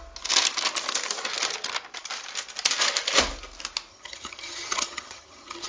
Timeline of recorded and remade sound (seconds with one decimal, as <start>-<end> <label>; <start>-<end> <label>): 0.0-3.9 recorded; 3.9-5.7 remade